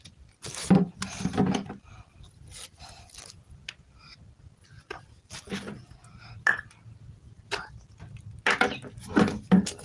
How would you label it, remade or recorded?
recorded